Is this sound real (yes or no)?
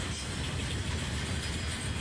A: yes